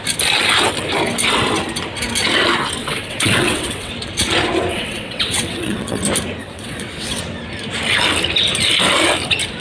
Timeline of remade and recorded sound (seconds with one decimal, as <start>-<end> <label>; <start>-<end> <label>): 0.0-2.8 recorded; 2.8-3.9 remade; 3.9-4.7 recorded; 4.7-6.0 remade; 6.0-6.4 recorded; 6.4-7.2 remade; 7.2-9.6 recorded

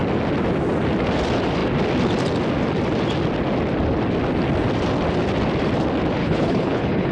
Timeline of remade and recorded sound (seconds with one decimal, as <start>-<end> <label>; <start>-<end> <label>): 0.0-6.2 recorded; 6.2-7.1 remade